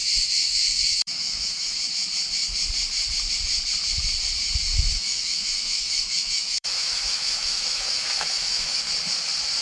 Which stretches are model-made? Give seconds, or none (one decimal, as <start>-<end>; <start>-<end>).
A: 0.0-1.8; 4.7-8.8